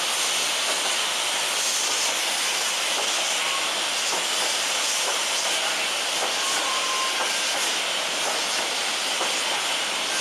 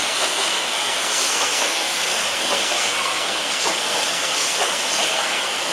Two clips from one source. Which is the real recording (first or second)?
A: first